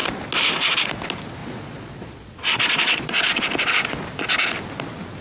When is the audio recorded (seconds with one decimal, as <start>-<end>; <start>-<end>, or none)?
0.0-1.4; 3.4-5.2